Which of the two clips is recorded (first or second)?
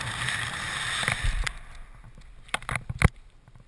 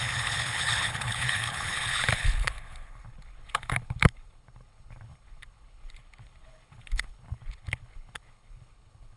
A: first